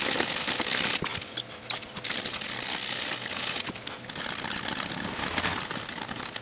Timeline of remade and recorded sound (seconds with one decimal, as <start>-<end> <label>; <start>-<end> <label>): 0.0-6.4 recorded